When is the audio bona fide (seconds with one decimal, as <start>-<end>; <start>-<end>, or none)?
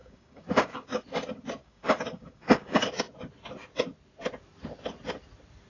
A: 1.0-1.6; 2.8-5.7